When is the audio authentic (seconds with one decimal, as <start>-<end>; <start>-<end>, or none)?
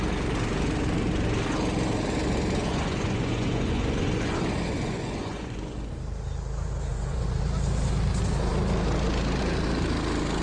0.0-2.6; 5.9-6.9; 7.4-10.4